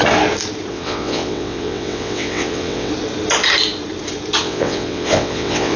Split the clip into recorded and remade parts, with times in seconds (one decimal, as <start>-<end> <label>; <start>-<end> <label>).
0.0-0.7 recorded; 0.7-2.9 remade; 2.9-4.4 recorded; 4.4-5.8 remade